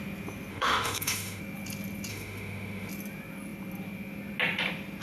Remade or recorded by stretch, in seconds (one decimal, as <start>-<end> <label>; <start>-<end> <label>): 0.0-0.5 recorded; 0.5-1.4 remade; 1.4-2.1 recorded; 2.1-2.9 remade; 2.9-5.0 recorded